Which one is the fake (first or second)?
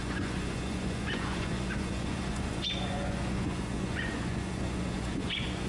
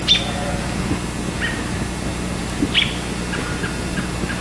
first